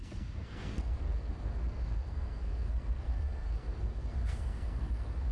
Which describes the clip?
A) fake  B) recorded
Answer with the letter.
A